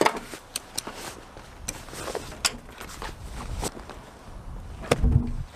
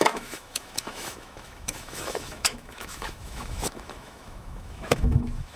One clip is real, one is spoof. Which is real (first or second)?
first